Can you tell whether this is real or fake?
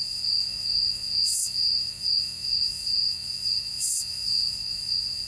fake